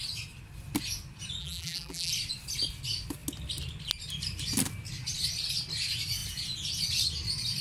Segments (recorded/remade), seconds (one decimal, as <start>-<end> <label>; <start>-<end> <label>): 0.0-1.4 recorded; 1.4-2.1 remade; 2.1-7.6 recorded